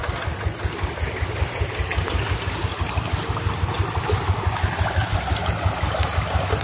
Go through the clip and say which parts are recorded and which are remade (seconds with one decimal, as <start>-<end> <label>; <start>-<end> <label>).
0.0-6.6 recorded